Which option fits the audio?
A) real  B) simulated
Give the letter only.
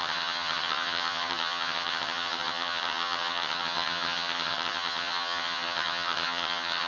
B